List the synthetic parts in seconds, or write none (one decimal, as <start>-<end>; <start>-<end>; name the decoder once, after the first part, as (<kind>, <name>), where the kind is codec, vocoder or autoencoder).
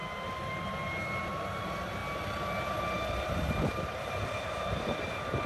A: none